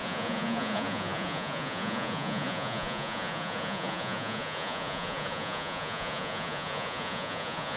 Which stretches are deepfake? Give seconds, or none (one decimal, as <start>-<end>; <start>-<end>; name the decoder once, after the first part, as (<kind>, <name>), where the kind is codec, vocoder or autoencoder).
0.0-7.8 (vocoder, Vocos)